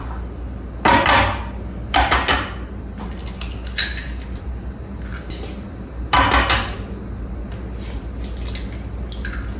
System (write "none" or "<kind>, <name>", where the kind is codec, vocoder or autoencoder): none